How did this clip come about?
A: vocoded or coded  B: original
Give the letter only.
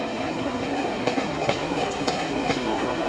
A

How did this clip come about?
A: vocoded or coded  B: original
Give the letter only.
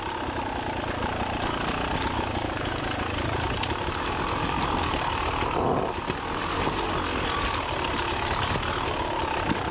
B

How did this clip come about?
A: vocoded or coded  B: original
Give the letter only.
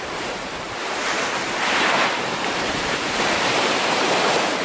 A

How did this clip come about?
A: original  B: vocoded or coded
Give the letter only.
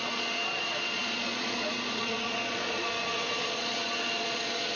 B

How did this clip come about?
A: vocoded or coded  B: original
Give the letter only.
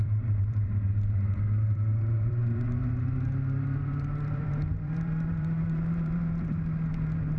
A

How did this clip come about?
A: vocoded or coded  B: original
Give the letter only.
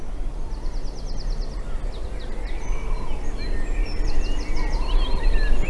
B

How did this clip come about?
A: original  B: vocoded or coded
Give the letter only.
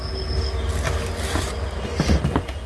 A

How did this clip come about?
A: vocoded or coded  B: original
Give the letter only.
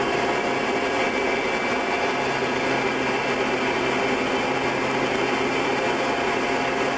B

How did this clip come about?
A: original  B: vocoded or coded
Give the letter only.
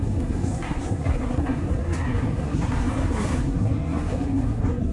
B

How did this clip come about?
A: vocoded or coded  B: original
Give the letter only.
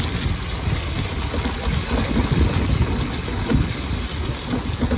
B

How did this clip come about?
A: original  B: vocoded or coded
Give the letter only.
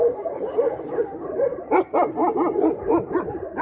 B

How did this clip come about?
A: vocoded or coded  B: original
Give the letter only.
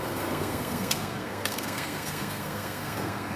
A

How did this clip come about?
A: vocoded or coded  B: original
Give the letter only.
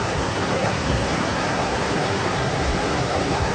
A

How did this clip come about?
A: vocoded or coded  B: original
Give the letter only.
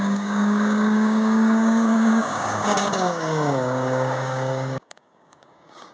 A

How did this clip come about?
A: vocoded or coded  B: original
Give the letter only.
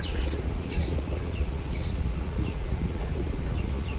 A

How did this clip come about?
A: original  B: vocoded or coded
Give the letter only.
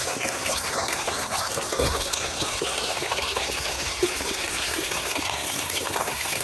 B